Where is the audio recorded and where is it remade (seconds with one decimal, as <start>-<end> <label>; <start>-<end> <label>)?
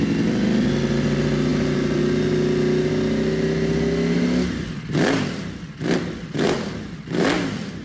0.0-1.5 recorded; 1.5-2.0 remade; 2.0-7.8 recorded